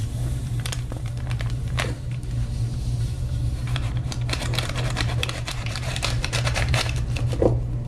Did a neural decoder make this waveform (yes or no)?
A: yes